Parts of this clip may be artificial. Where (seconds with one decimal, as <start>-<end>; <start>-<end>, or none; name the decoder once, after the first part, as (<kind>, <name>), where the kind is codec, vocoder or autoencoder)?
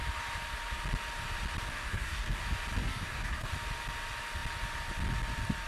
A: 1.7-2.4 (codec, DAC); 2.8-3.5